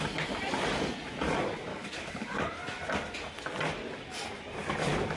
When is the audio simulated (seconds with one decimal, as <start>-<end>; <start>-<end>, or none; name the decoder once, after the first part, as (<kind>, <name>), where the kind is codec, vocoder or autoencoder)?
1.7-2.5 (codec, DAC)

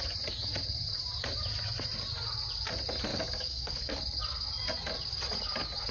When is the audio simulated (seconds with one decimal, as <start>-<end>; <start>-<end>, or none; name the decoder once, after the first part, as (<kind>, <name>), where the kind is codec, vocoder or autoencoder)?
3.1-4.0 (codec, DAC)

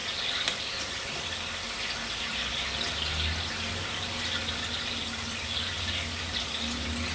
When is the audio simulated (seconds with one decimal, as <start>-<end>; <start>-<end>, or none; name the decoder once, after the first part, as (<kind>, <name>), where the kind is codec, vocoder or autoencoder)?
none

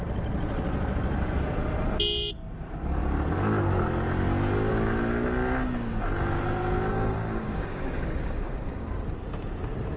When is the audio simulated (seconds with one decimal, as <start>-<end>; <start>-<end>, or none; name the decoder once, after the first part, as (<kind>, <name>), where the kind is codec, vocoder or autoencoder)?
6.9-8.9 (codec, DAC)

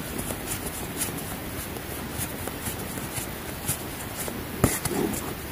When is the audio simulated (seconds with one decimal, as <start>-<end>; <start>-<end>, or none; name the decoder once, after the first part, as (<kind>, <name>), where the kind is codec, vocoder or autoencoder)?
none

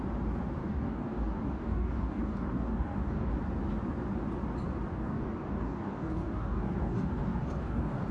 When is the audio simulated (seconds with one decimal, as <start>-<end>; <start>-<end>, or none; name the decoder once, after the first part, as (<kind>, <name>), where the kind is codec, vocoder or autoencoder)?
0.6-3.3 (codec, DAC); 4.9-8.1

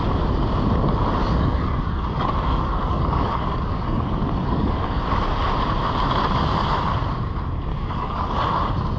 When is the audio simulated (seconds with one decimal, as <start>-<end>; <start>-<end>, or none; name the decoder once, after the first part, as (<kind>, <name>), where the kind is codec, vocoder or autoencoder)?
1.2-5.0 (codec, DAC); 7.7-8.2